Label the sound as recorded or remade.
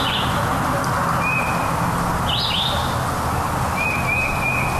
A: recorded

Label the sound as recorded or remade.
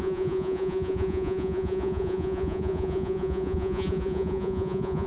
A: remade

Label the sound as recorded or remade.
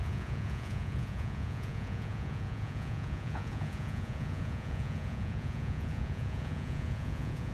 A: remade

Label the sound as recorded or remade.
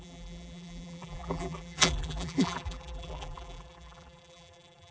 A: remade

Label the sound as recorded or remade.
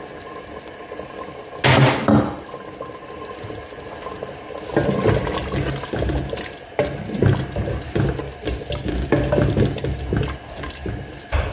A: recorded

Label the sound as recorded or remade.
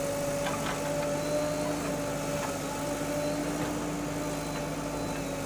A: recorded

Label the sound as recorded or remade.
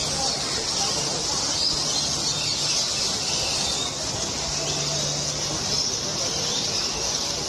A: recorded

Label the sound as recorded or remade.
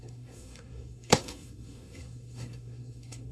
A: remade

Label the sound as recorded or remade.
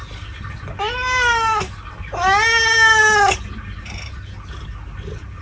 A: recorded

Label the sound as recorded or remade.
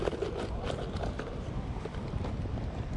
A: recorded